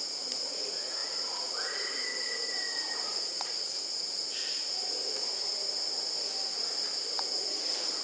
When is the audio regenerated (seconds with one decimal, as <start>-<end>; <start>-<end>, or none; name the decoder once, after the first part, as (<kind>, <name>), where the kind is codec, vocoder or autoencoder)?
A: 0.0-5.5 (vocoder, Vocos); 7.3-8.0